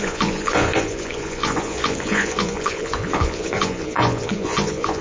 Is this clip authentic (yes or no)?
no